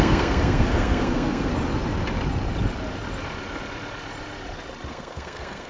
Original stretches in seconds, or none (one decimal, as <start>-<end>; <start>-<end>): 1.5-4.9